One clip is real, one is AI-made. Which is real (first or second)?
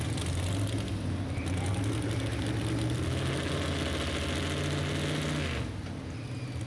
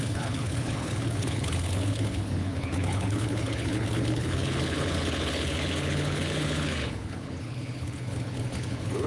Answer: first